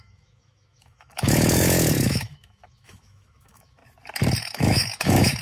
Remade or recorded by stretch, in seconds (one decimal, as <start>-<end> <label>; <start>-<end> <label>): 0.0-3.8 remade; 3.8-4.4 recorded; 4.4-5.4 remade